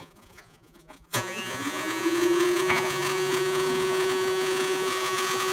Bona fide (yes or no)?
no